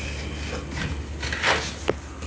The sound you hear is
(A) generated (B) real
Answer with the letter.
B